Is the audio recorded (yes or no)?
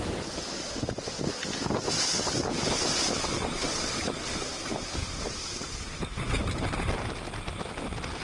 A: yes